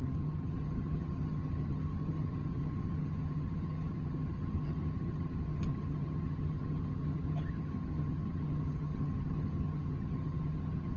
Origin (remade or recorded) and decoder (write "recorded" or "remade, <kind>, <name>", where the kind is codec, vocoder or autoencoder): remade, vocoder, HiFi-GAN